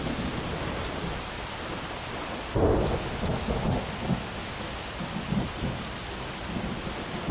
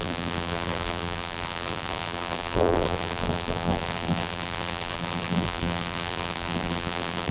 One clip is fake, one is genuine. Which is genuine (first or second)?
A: first